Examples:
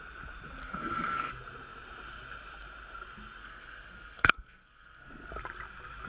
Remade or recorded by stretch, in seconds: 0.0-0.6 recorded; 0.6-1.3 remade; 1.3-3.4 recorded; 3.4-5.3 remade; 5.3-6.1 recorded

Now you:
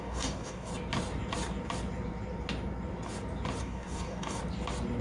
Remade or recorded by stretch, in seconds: 0.0-0.7 remade; 0.7-3.6 recorded; 3.6-4.4 remade; 4.4-5.0 recorded